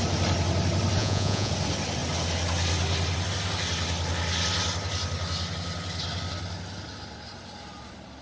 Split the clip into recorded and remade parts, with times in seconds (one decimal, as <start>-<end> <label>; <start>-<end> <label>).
0.0-1.0 recorded; 1.0-1.5 remade; 1.5-8.2 recorded